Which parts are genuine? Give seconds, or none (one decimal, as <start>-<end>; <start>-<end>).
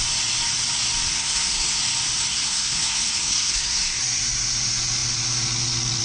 0.0-1.1; 1.8-2.3; 4.0-6.0